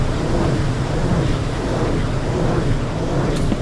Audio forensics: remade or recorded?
recorded